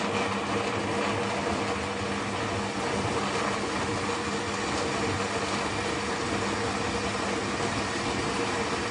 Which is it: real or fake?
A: real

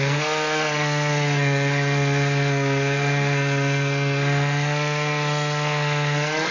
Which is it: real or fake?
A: fake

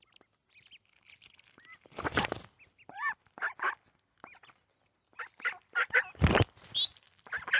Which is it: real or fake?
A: real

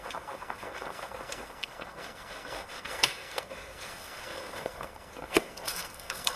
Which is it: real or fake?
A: fake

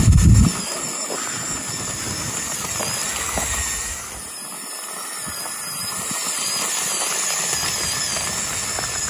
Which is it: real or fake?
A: real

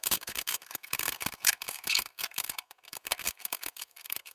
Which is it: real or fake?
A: fake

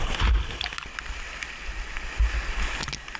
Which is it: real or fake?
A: real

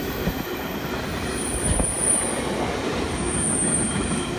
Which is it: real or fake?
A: real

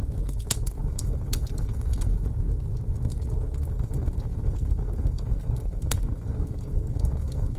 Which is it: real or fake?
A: fake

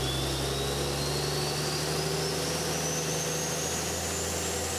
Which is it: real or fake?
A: real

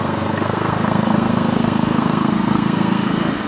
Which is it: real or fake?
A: fake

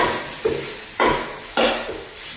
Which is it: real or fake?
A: real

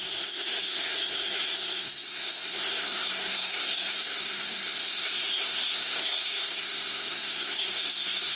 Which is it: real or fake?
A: fake